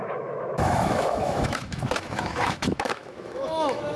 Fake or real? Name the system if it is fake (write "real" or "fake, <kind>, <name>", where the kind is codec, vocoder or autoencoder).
fake, autoencoder, DAC-VAE